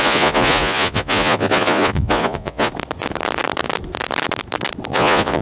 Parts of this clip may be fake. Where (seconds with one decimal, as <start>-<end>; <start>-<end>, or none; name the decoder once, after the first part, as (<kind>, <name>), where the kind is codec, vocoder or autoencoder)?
0.0-2.7 (vocoder, Vocos); 4.9-5.4